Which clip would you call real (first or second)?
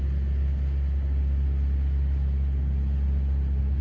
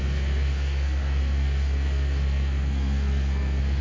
first